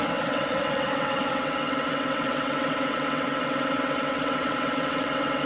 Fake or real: fake